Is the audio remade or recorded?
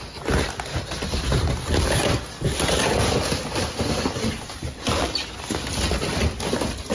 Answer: recorded